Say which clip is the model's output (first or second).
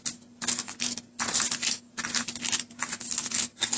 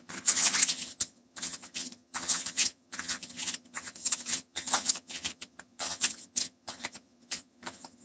second